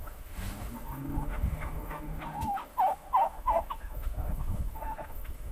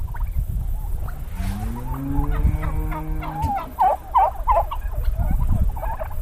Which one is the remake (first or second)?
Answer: first